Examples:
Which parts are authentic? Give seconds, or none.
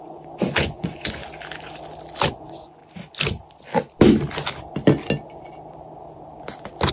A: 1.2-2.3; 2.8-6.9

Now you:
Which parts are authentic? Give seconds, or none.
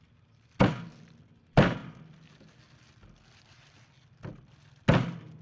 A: 0.0-5.4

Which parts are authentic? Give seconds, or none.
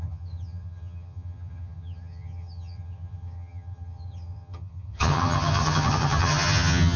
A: none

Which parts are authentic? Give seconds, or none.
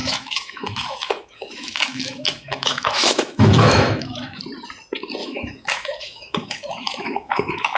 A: 4.4-5.2